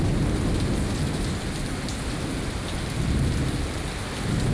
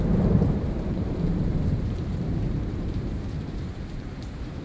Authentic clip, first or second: first